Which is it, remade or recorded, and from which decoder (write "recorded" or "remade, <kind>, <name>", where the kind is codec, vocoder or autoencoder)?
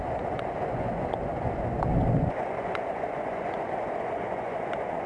remade, vocoder, Vocos